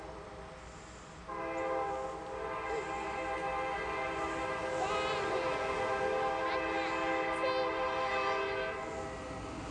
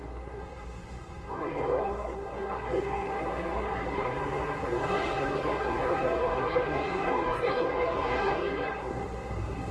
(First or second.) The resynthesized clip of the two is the second